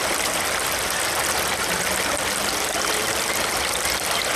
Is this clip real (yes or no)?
yes